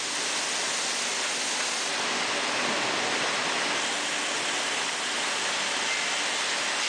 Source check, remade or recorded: recorded